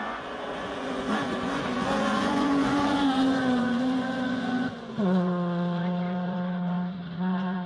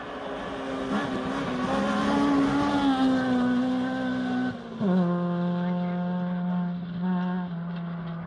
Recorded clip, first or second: second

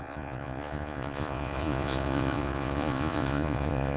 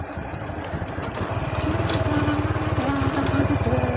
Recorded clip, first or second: second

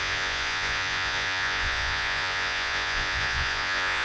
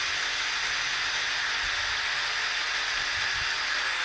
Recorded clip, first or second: second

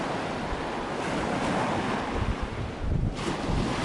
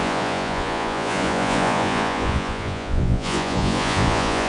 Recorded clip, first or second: first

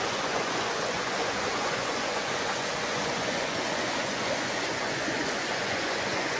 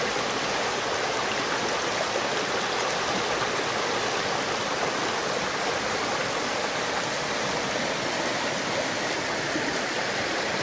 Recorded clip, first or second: second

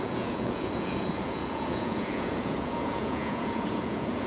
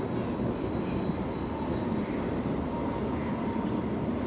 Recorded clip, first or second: second